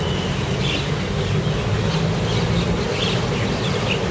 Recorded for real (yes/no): yes